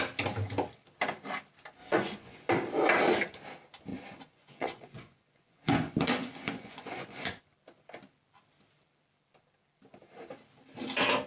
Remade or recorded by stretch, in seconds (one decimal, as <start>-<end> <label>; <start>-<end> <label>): 0.0-1.8 recorded; 1.8-2.5 remade; 2.5-3.9 recorded; 3.9-7.4 remade; 7.4-11.3 recorded